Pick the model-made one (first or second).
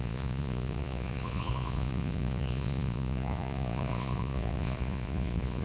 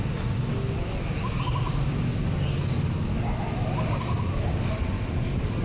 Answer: first